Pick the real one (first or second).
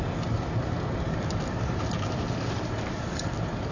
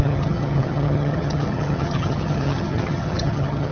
first